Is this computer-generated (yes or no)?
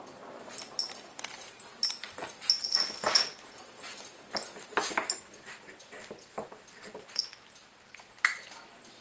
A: no